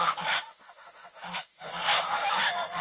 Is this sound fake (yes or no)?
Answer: yes